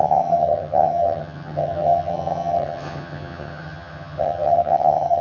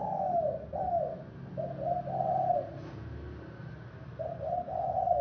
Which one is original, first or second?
second